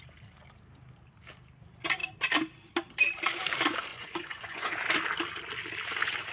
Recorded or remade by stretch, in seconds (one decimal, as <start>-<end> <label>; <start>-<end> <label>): 0.0-3.9 recorded; 3.9-4.7 remade; 4.7-6.3 recorded